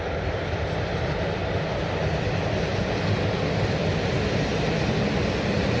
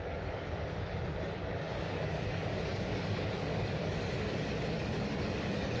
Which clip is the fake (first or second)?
second